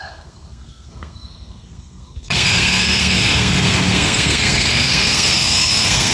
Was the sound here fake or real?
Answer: fake